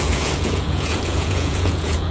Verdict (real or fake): fake